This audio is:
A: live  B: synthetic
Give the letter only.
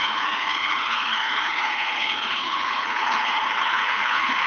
B